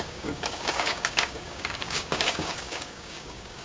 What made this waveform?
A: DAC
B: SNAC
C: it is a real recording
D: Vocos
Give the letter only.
A